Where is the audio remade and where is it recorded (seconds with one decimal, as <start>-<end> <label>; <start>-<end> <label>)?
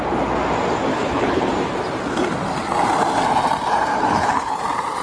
0.0-0.9 recorded; 0.9-1.5 remade; 1.5-3.9 recorded; 3.9-4.6 remade; 4.6-5.0 recorded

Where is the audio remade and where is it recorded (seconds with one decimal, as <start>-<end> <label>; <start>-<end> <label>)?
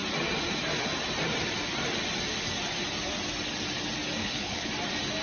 0.0-4.2 recorded; 4.2-4.7 remade; 4.7-5.2 recorded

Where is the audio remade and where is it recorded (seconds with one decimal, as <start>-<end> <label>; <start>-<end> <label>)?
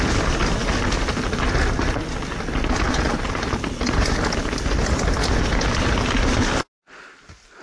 0.0-7.6 recorded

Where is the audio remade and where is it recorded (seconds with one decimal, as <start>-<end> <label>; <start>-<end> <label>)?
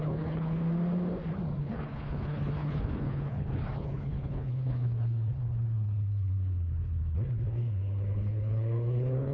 0.0-0.6 remade; 0.6-1.6 recorded; 1.6-9.3 remade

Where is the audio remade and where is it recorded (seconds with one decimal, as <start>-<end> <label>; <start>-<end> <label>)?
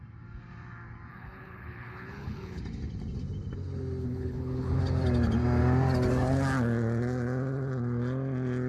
0.0-1.1 recorded; 1.1-2.6 remade; 2.6-4.0 recorded; 4.0-4.8 remade; 4.8-8.7 recorded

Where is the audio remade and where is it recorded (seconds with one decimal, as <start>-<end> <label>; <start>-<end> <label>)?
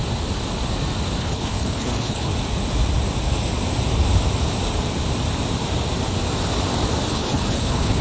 0.0-1.2 recorded; 1.2-2.3 remade; 2.3-7.1 recorded; 7.1-8.0 remade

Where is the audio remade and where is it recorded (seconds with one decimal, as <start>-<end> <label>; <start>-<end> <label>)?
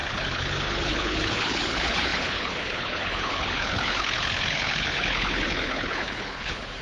0.0-6.8 remade